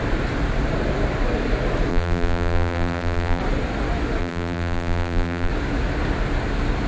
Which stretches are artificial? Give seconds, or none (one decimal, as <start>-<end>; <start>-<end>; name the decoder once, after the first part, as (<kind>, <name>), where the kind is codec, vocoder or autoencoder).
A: 1.9-3.4 (vocoder, BigVGAN v2); 4.2-5.5